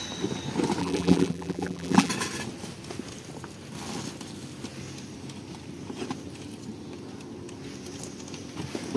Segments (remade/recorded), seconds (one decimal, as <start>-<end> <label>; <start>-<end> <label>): 0.0-0.8 recorded; 0.8-2.1 remade; 2.1-9.0 recorded